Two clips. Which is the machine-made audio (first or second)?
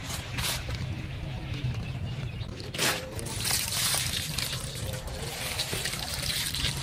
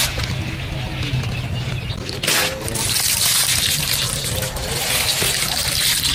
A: first